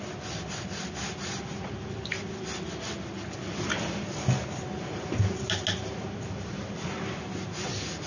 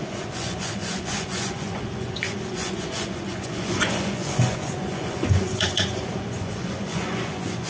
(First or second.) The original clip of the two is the first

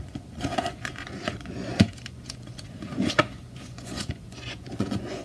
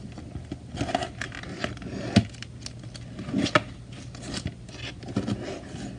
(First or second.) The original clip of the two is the second